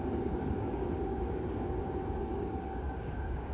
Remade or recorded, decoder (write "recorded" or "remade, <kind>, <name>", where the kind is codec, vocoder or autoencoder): remade, codec, DAC